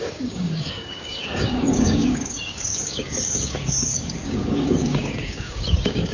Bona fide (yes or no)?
no